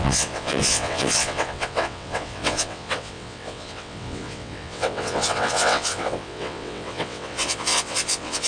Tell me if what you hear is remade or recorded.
remade